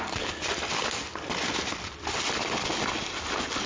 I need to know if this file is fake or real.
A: real